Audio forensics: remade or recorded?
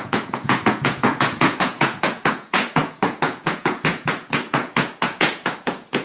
remade